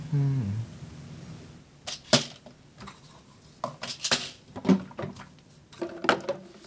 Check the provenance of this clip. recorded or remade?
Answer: recorded